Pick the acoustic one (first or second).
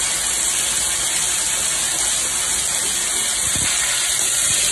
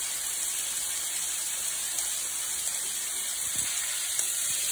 first